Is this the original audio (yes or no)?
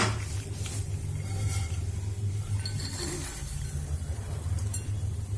yes